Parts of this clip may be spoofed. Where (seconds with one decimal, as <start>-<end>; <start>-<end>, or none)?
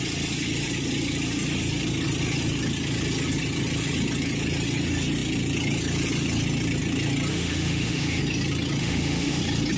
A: 7.3-8.2; 8.8-9.4